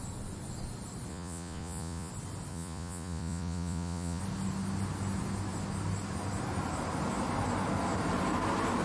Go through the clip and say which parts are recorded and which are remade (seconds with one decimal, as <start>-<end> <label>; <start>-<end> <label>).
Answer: 0.0-1.1 recorded; 1.1-2.1 remade; 2.1-2.5 recorded; 2.5-4.2 remade; 4.2-8.8 recorded